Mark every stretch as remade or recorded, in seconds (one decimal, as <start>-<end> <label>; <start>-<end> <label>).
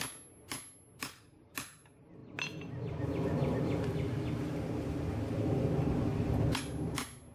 0.0-7.3 recorded